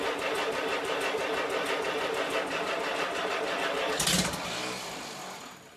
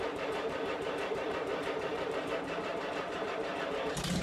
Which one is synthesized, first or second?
second